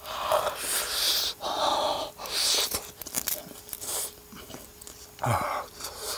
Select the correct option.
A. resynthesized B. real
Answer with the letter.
B